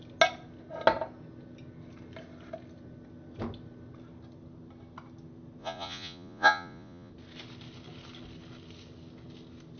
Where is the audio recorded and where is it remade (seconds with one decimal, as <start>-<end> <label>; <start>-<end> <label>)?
0.0-5.6 recorded; 5.6-7.1 remade; 7.1-9.8 recorded

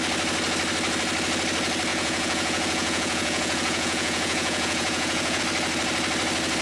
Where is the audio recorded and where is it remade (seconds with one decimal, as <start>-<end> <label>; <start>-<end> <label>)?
0.0-1.9 recorded; 1.9-5.4 remade; 5.4-6.6 recorded

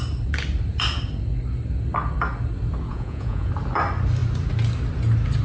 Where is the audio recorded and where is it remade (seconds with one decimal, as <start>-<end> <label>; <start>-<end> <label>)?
0.0-2.9 recorded; 2.9-3.5 remade; 3.5-5.4 recorded